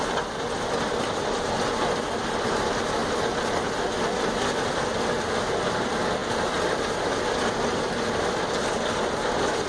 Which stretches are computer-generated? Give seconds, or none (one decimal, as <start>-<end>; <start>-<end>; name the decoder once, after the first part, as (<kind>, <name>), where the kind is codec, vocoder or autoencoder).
none